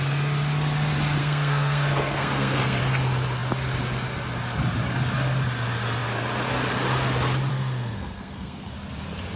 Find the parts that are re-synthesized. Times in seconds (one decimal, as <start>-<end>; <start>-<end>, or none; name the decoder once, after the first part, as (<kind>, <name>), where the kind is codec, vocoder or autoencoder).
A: 1.2-2.8 (codec, SNAC); 7.5-8.7